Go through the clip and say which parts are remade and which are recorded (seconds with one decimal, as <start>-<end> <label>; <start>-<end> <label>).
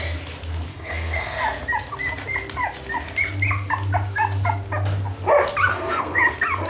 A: 0.0-0.7 recorded; 0.7-1.4 remade; 1.4-5.7 recorded; 5.7-6.2 remade; 6.2-6.7 recorded